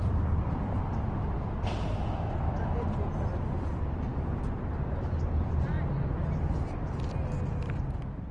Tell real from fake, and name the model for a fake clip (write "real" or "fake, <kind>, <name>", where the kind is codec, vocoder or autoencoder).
real